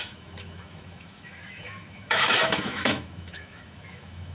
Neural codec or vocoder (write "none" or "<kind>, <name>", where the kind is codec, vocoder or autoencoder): autoencoder, DAC-VAE